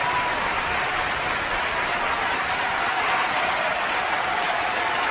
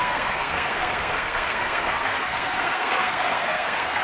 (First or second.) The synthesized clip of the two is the second